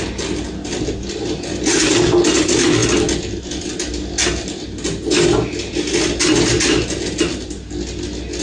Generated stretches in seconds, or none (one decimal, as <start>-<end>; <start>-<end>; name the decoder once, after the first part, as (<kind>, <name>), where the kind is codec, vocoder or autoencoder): none